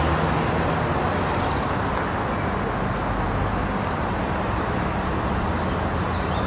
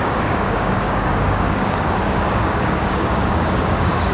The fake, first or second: second